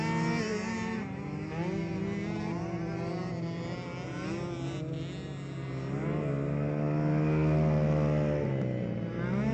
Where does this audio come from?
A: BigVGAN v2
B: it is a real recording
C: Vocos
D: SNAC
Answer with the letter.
B